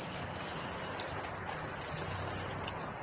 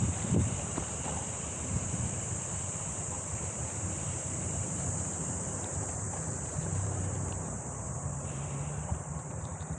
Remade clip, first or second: second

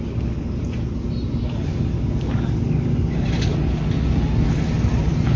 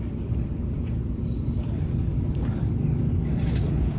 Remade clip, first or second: second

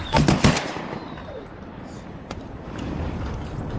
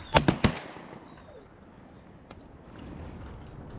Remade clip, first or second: first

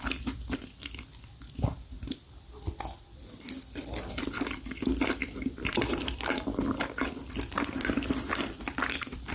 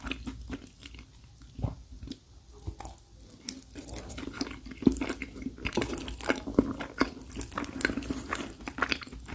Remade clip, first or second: first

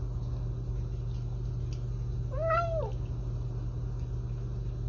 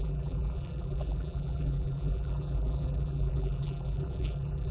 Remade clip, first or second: second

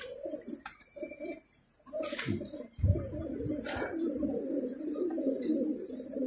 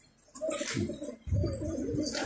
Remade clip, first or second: first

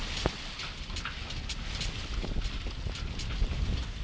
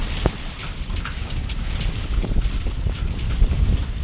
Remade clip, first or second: second